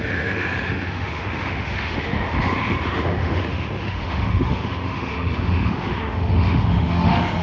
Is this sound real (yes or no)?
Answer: no